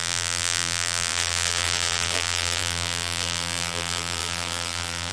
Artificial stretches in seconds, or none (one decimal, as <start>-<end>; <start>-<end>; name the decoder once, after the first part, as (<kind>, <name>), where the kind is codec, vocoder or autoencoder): 0.0-5.1 (vocoder, BigVGAN v2)